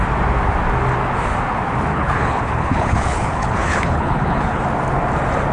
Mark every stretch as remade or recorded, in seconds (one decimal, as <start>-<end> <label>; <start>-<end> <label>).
0.0-1.9 recorded; 1.9-4.6 remade; 4.6-5.5 recorded